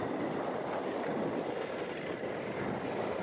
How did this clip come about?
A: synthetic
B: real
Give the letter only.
B